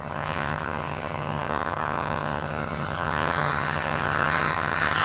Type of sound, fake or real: fake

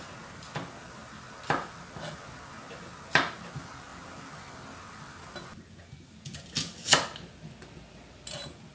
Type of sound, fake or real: real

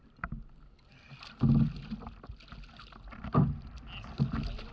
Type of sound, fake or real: real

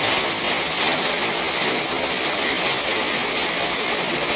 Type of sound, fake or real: real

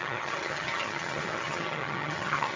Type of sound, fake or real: fake